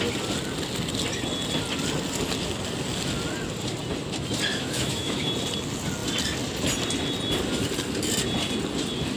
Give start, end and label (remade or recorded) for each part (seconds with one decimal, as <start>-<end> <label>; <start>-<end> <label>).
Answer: 0.0-4.5 recorded; 4.5-5.3 remade; 5.3-9.2 recorded